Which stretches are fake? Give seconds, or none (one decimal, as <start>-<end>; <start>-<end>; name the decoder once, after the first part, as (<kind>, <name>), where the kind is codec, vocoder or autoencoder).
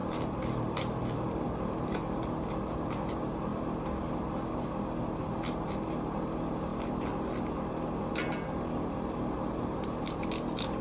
0.0-1.6 (vocoder, BigVGAN v2)